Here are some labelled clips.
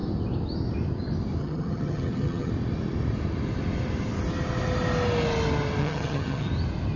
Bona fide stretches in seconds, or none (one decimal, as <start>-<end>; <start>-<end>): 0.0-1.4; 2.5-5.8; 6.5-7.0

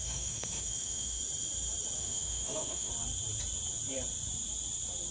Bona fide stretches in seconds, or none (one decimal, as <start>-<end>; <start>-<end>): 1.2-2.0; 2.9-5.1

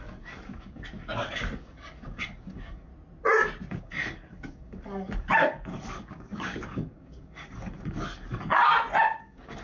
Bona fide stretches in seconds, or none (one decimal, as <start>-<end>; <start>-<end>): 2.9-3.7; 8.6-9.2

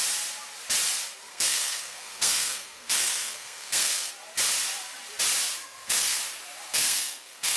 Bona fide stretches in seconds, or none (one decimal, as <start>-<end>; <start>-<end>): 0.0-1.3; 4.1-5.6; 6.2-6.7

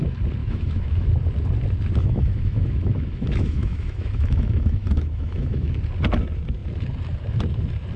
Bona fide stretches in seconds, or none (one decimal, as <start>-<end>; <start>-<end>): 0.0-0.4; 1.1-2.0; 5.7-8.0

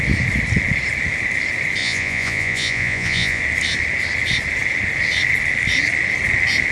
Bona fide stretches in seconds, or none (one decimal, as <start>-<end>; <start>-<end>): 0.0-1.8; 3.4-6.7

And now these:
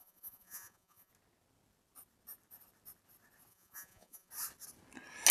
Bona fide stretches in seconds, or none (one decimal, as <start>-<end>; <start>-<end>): 1.1-3.5; 4.3-5.3

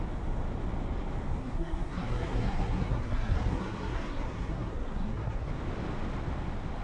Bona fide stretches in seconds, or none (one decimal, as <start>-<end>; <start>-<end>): 0.0-1.4; 5.5-6.8